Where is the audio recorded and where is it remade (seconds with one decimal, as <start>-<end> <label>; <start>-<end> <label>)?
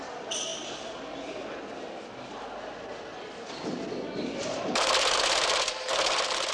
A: 0.0-0.5 remade; 0.5-4.4 recorded; 4.4-6.5 remade